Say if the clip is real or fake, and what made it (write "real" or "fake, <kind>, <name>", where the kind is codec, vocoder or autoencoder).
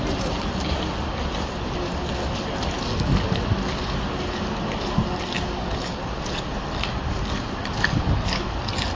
real